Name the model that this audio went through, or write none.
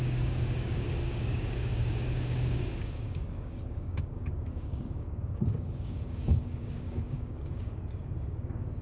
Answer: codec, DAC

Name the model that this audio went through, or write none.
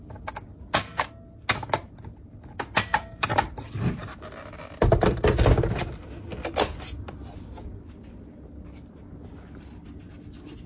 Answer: none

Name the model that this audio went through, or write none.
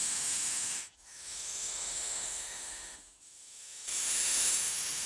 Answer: autoencoder, DAC-VAE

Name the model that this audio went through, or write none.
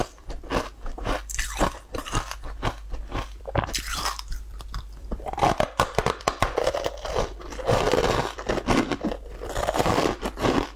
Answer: vocoder, BigVGAN v2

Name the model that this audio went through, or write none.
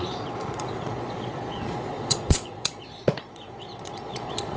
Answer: vocoder, Vocos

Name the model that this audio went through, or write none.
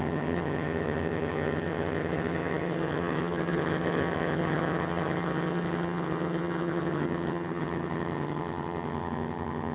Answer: vocoder, HiFi-GAN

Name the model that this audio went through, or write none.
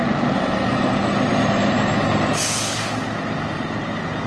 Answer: none